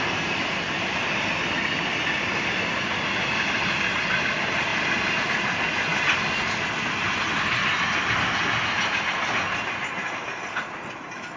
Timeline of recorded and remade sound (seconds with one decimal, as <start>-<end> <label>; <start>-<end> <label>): 0.0-11.4 recorded